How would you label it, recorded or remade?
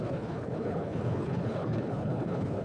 remade